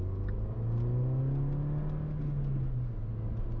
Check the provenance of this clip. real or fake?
real